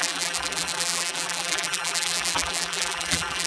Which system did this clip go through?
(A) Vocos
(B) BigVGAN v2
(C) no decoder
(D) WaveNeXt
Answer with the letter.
B